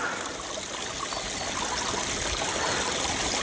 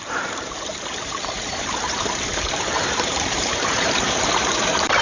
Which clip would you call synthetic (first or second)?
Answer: second